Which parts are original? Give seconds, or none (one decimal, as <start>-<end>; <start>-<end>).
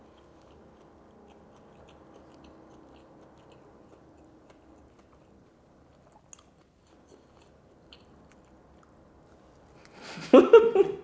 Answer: 0.0-11.0